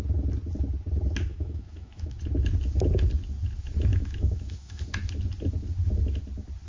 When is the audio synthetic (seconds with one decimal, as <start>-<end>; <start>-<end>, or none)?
1.3-2.2; 3.9-4.8